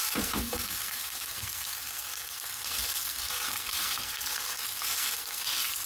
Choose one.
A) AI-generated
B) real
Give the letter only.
A